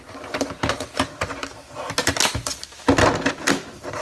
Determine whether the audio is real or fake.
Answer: real